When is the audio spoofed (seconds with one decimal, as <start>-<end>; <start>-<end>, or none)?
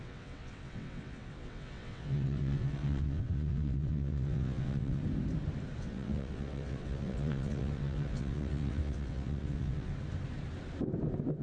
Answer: 0.0-5.0; 5.8-9.9